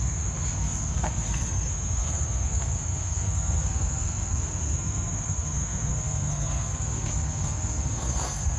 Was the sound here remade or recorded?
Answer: remade